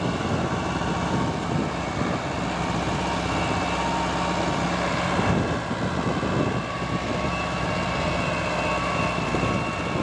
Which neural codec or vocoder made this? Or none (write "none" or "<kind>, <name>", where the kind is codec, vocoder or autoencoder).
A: none